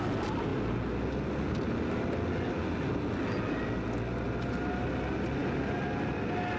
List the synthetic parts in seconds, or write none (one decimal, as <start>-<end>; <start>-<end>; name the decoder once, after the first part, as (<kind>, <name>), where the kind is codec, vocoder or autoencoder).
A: none